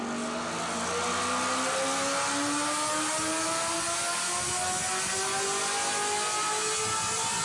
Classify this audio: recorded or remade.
recorded